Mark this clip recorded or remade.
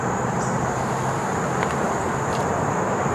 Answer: recorded